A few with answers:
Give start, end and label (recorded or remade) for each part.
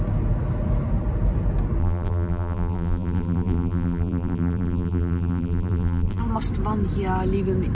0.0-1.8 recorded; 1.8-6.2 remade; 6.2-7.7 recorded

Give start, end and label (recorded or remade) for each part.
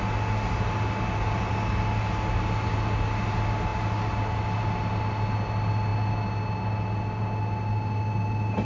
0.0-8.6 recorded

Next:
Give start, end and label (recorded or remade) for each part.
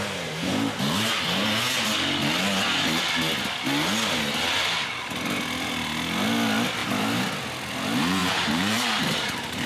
0.0-8.2 recorded; 8.2-9.7 remade